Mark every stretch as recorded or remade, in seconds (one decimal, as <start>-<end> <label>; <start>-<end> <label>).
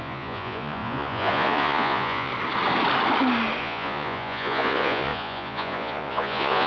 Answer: 0.0-2.3 remade; 2.3-3.6 recorded; 3.6-6.7 remade